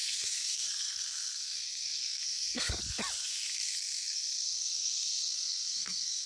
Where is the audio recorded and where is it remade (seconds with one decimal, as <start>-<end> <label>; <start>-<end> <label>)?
0.0-2.8 remade; 2.8-3.2 recorded; 3.2-6.3 remade